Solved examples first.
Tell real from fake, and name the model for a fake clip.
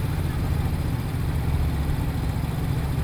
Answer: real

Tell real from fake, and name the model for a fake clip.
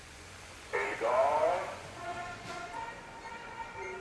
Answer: fake, vocoder, Vocos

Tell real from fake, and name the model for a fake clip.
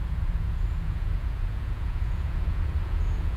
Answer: fake, vocoder, Vocos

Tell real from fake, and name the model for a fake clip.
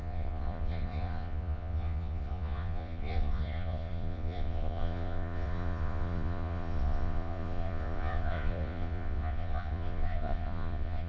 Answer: fake, vocoder, Vocos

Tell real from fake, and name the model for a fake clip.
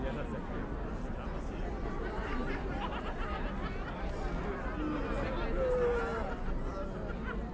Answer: real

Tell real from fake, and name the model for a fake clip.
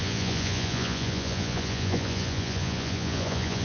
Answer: fake, vocoder, Vocos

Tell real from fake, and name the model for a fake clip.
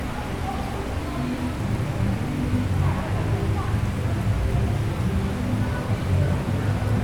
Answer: real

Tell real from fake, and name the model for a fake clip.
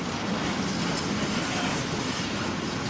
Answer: real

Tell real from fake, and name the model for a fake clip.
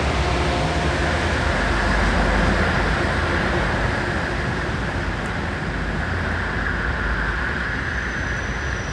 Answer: real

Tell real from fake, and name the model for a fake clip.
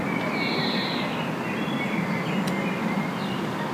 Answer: real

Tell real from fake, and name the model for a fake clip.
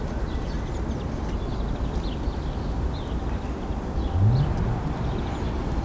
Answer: real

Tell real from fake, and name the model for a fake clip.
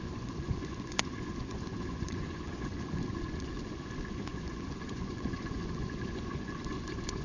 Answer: fake, vocoder, Vocos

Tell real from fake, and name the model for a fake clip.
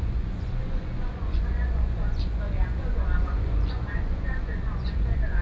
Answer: fake, vocoder, Vocos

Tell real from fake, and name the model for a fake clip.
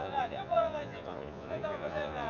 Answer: fake, vocoder, Vocos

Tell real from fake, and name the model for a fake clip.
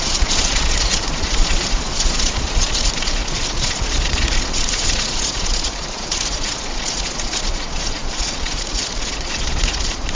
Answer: fake, vocoder, Vocos